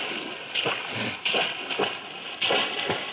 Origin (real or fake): real